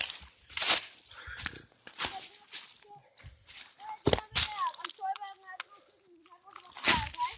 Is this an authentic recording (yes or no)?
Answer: yes